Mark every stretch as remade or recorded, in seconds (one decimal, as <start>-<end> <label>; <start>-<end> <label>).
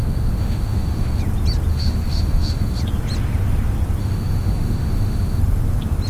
0.0-1.2 remade; 1.2-1.7 recorded; 1.7-2.8 remade; 2.8-4.0 recorded; 4.0-5.4 remade; 5.4-6.1 recorded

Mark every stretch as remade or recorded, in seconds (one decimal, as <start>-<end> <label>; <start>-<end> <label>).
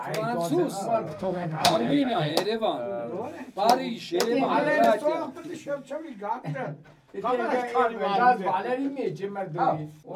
0.0-1.1 recorded; 1.1-2.3 remade; 2.3-10.2 recorded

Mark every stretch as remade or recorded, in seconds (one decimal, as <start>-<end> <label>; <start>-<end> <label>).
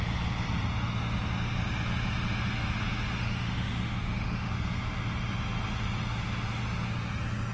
0.0-3.2 recorded; 3.2-4.5 remade; 4.5-7.5 recorded